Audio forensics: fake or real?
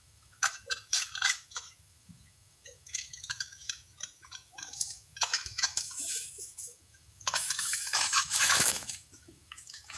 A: fake